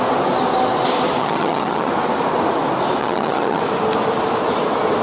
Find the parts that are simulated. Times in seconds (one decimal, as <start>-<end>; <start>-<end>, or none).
1.2-1.9; 3.0-3.6